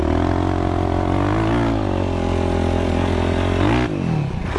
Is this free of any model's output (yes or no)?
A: yes